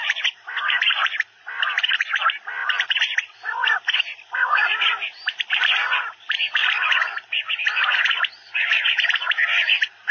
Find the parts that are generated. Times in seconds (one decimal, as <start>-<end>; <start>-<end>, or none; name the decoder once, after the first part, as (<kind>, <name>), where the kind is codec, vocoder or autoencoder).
2.6-4.0 (vocoder, BigVGAN v2); 6.6-8.2